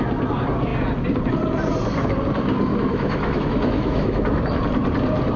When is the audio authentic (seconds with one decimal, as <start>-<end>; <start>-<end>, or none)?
0.0-2.7; 4.4-5.4